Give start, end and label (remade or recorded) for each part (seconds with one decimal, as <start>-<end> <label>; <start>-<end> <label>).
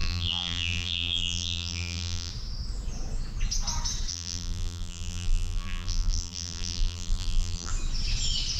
0.0-2.3 remade; 2.3-4.1 recorded; 4.1-7.7 remade; 7.7-8.6 recorded